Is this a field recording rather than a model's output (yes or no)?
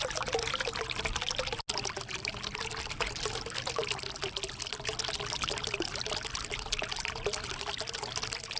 yes